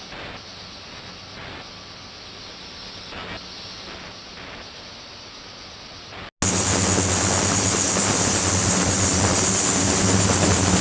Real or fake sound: real